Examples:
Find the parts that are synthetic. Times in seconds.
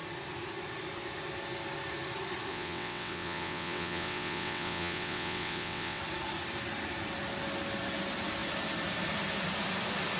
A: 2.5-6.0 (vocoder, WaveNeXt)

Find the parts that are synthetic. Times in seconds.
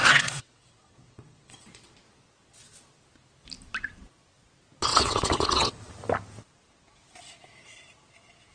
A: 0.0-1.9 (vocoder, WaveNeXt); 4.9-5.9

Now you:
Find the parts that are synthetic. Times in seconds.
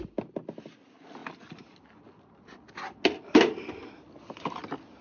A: none